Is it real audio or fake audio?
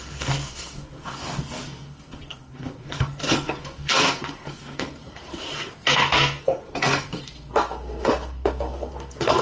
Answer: fake